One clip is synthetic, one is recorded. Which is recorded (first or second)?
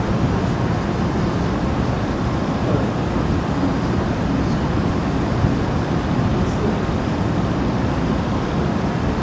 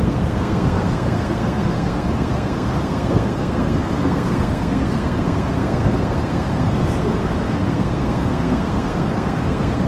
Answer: first